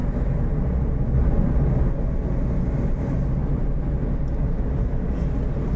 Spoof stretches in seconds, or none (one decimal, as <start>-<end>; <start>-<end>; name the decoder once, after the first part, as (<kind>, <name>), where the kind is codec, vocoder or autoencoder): none